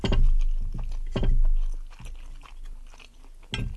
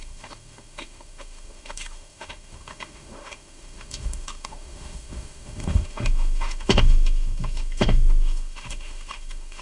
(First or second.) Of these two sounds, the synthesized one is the second